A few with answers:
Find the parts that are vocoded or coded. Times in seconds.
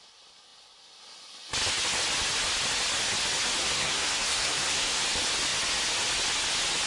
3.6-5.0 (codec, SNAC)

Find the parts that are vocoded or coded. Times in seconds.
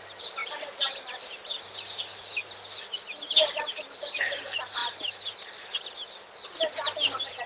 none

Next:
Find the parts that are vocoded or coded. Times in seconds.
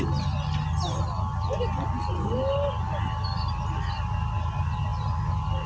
none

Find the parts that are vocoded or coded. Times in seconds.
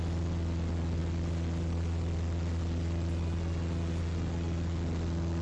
none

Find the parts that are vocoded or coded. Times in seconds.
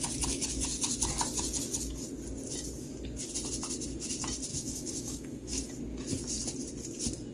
4.5-5.7 (autoencoder, DAC-VAE)